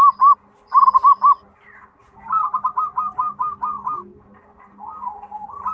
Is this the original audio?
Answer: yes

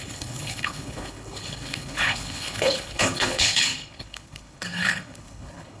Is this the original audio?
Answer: no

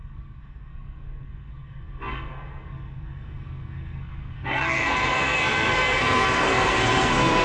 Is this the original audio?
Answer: no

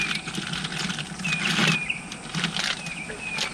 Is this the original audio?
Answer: yes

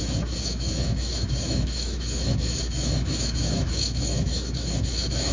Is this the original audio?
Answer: no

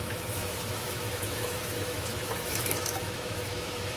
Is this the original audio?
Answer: no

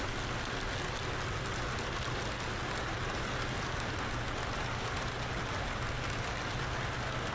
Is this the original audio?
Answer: yes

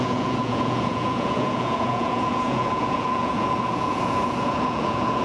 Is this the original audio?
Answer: no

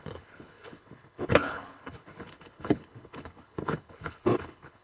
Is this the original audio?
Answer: no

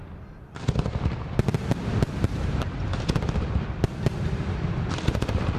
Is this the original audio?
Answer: yes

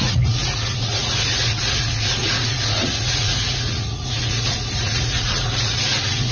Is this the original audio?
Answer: no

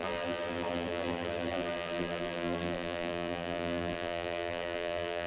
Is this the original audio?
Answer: no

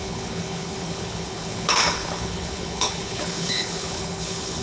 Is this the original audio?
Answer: no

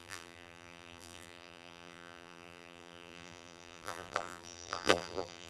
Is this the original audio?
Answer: no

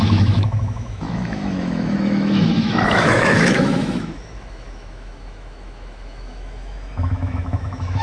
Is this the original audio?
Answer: no